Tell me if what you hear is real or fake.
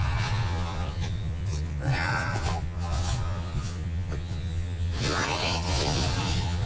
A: fake